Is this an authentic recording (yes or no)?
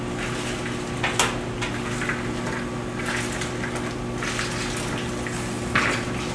yes